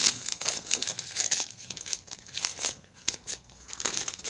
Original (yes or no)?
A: no